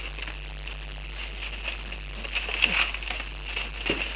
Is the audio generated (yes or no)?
no